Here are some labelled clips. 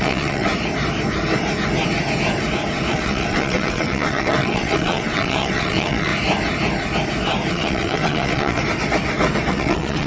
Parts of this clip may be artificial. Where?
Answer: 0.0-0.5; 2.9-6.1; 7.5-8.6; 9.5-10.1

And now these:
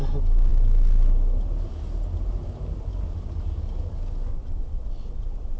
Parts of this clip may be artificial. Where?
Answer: 4.3-5.6

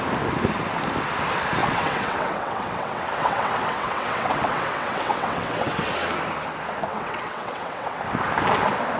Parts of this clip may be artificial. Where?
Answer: 1.6-5.9; 6.9-8.0

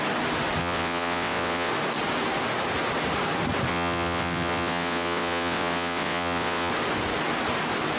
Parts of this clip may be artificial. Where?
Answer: 0.6-1.7; 3.7-6.7

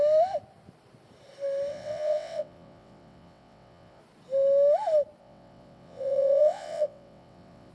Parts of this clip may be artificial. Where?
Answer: 1.7-4.0; 5.2-7.7

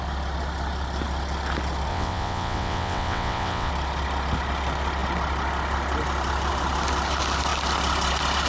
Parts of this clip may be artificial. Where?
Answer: 1.9-3.7